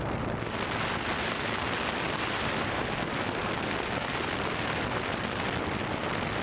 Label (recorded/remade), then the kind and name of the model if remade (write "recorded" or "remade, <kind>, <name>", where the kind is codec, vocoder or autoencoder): recorded